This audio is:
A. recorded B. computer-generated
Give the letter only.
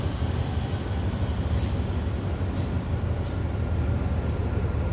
B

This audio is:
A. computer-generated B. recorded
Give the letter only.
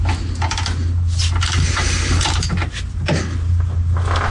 B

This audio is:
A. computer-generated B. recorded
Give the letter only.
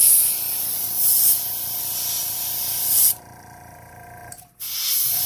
A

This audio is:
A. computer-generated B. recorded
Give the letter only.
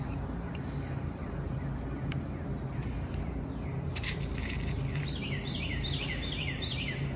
A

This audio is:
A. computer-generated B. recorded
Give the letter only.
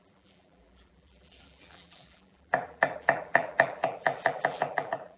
A